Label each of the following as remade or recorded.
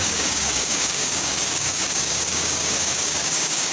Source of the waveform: remade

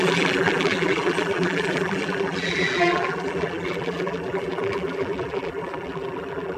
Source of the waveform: remade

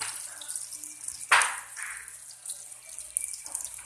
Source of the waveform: recorded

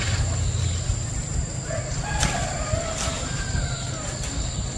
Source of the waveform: recorded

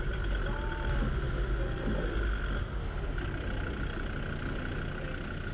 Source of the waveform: recorded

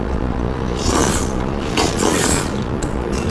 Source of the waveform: remade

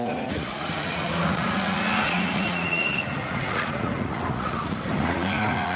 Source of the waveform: remade